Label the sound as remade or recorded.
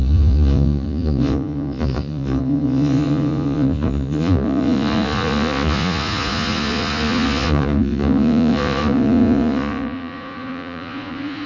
remade